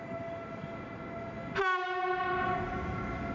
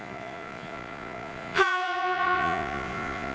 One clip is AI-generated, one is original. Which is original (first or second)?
first